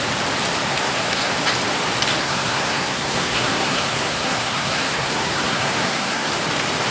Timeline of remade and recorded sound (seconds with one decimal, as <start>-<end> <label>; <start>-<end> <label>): 0.0-0.7 recorded; 0.7-1.3 remade; 1.3-2.2 recorded; 2.2-6.3 remade; 6.3-6.9 recorded